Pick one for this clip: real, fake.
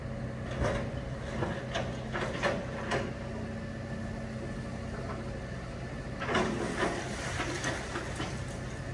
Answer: real